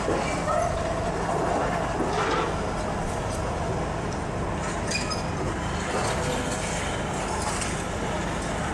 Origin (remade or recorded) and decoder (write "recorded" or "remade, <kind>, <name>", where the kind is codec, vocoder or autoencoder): recorded